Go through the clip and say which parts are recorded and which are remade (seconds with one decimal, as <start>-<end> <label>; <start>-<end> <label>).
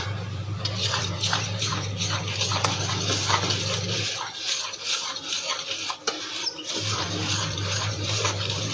0.0-1.7 remade; 1.7-6.7 recorded; 6.7-8.7 remade